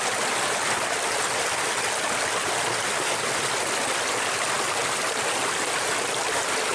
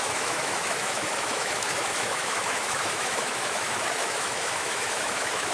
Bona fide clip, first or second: first